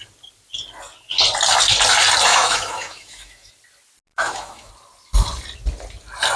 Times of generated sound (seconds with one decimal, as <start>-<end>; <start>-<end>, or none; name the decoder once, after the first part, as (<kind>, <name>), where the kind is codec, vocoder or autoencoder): 2.3-3.5 (autoencoder, DAC-VAE); 4.1-4.7